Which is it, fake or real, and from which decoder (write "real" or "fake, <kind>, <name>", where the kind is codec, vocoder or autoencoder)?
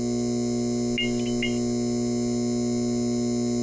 real